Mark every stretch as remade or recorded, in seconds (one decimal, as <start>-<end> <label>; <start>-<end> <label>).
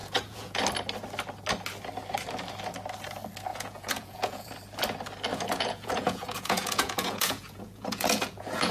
0.0-0.6 remade; 0.6-3.5 recorded; 3.5-4.5 remade; 4.5-5.3 recorded; 5.3-8.7 remade